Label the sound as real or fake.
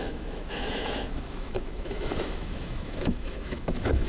fake